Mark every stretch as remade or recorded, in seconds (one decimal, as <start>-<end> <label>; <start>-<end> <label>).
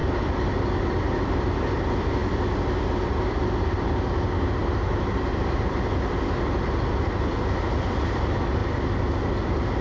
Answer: 0.0-4.6 recorded; 4.6-5.9 remade; 5.9-9.8 recorded